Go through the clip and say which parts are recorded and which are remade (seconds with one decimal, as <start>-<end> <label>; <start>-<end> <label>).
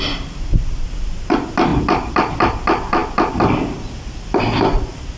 0.0-5.2 recorded